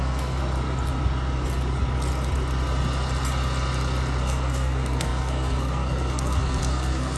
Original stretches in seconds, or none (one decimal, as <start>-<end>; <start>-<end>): 0.4-4.2